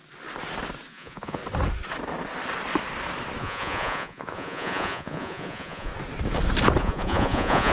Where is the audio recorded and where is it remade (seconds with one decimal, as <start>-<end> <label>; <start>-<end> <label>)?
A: 0.0-0.9 recorded; 0.9-1.4 remade; 1.4-3.4 recorded; 3.4-5.9 remade; 5.9-6.8 recorded; 6.8-7.7 remade